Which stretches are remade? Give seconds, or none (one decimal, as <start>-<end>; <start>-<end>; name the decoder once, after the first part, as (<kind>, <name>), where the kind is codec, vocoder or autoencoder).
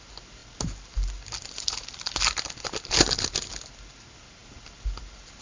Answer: none